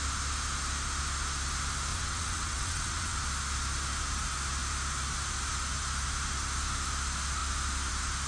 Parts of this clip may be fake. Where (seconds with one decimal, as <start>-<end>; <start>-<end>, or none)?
1.9-3.2